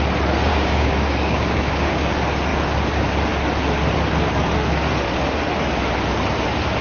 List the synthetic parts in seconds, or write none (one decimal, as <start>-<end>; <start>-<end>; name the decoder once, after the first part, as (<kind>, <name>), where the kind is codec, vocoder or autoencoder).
0.5-2.1 (codec, DAC)